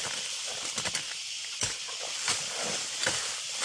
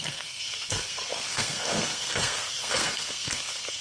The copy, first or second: second